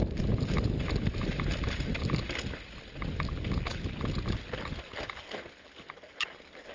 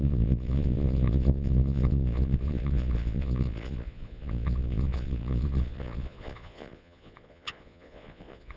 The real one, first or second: first